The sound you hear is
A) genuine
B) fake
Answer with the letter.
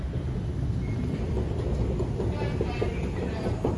A